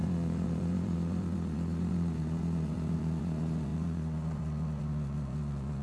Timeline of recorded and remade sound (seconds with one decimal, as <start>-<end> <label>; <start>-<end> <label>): 0.0-5.8 remade

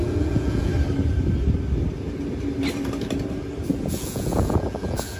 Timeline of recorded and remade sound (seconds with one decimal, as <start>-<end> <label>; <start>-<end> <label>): 0.0-0.7 remade; 0.7-3.8 recorded; 3.8-5.2 remade

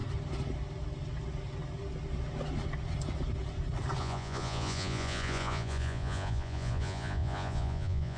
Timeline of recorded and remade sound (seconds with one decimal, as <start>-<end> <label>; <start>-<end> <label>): 0.0-4.0 recorded; 4.0-8.2 remade

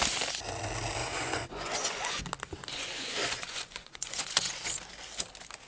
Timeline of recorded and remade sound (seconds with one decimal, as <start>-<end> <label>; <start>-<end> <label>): 0.0-1.0 recorded; 1.0-2.2 remade; 2.2-2.7 recorded; 2.7-4.7 remade; 4.7-5.7 recorded

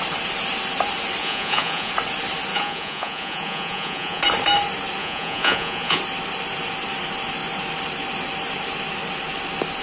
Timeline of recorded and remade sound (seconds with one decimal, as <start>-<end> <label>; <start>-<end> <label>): 0.0-1.2 recorded; 1.2-1.9 remade; 1.9-2.5 recorded; 2.5-4.2 remade; 4.2-5.0 recorded; 5.0-6.0 remade; 6.0-9.8 recorded

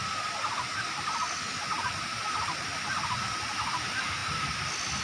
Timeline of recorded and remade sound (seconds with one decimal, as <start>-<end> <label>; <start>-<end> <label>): 0.0-5.0 recorded

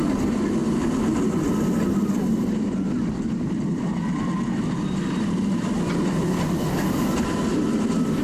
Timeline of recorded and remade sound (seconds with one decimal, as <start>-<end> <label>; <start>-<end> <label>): 0.0-8.2 recorded

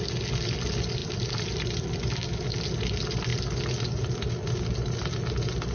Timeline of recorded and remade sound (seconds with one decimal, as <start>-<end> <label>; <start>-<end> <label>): 0.0-5.7 recorded